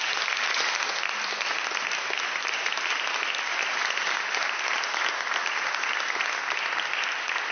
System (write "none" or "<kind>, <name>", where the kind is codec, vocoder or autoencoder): none